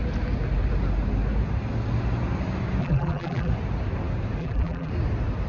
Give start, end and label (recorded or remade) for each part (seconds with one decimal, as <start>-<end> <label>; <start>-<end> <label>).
0.0-2.8 recorded; 2.8-3.5 remade; 3.5-4.4 recorded; 4.4-4.9 remade; 4.9-5.5 recorded